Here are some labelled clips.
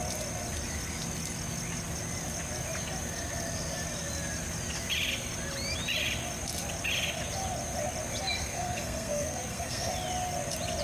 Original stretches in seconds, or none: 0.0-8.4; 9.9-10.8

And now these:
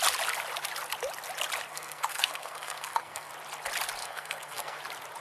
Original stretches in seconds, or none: 0.0-1.7; 3.3-4.0; 4.8-5.2